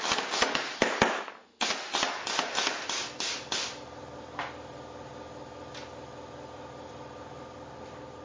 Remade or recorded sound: recorded